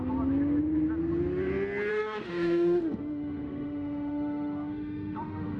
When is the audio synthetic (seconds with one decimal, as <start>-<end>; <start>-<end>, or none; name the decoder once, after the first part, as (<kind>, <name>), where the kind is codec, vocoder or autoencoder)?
1.9-5.6 (autoencoder, DAC-VAE)